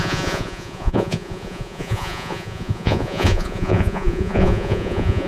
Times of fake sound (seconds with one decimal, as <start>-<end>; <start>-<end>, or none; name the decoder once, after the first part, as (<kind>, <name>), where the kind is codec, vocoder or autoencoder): 0.0-5.3 (vocoder, Vocos)